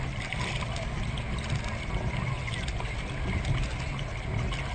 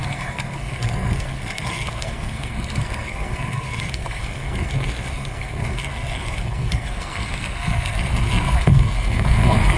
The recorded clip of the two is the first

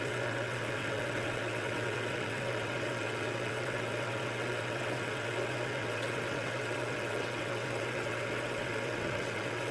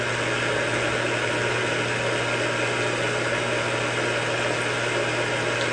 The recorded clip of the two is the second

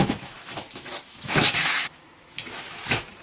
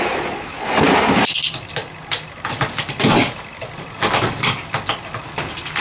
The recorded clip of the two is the second